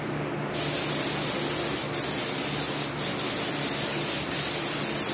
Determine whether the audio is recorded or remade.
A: recorded